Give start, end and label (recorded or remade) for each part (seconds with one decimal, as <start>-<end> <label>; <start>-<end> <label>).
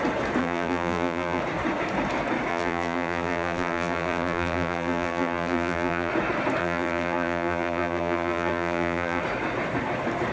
0.0-0.4 recorded; 0.4-1.4 remade; 1.4-2.5 recorded; 2.5-6.1 remade; 6.1-6.6 recorded; 6.6-9.2 remade; 9.2-10.3 recorded